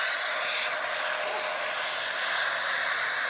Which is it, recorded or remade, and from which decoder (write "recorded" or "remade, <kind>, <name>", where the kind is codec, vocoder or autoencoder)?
recorded